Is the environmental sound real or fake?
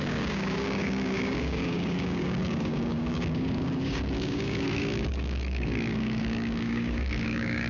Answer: fake